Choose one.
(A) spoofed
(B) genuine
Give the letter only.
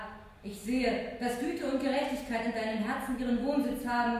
B